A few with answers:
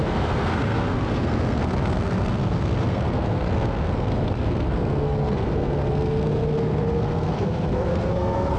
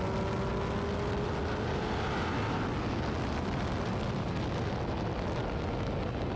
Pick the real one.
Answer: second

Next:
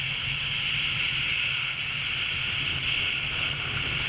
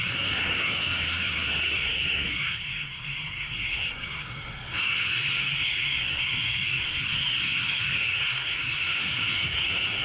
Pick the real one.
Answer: first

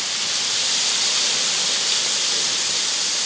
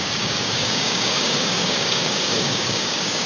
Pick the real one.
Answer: first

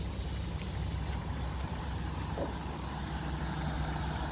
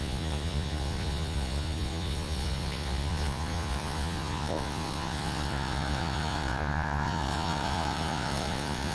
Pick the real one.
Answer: first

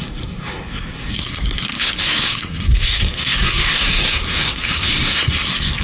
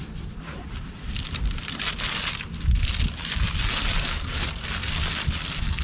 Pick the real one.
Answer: second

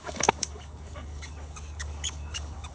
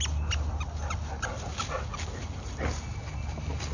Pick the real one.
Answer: second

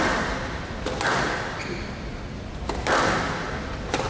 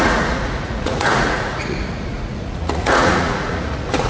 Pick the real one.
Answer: first